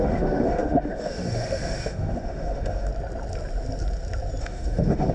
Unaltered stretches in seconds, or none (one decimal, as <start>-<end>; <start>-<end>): 2.9-4.4